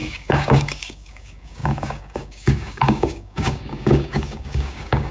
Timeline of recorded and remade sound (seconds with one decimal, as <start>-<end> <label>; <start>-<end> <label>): 0.0-5.1 remade